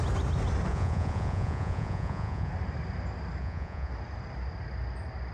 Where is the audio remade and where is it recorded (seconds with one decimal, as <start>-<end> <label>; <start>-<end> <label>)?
0.0-0.7 recorded; 0.7-2.5 remade; 2.5-3.4 recorded; 3.4-3.9 remade; 3.9-5.3 recorded